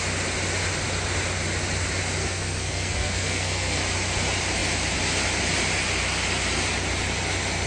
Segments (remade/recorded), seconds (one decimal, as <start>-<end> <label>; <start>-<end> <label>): 0.0-2.2 recorded; 2.2-3.8 remade; 3.8-7.7 recorded